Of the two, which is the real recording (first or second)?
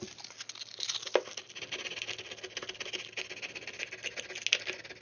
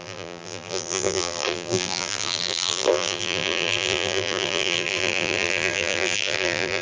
first